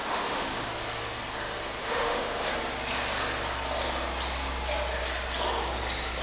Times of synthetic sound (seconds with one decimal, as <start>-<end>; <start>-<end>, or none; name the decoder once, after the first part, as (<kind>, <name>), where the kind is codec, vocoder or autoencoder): 0.0-0.7 (autoencoder, DAC-VAE); 1.8-2.5